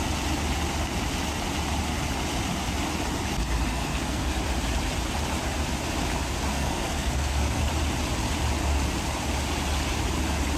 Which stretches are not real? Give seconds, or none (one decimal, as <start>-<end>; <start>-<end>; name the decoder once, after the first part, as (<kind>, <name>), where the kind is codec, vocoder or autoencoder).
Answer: 3.7-4.3 (codec, SNAC); 6.5-7.6